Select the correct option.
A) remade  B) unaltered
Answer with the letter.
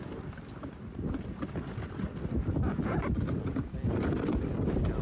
B